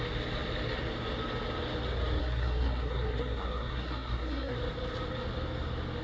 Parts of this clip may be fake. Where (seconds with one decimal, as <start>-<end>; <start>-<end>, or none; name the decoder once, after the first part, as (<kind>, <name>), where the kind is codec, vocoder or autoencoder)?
2.2-4.6 (codec, SNAC)